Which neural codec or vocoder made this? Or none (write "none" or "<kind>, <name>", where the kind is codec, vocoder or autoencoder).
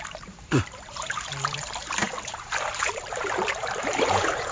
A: vocoder, BigVGAN v2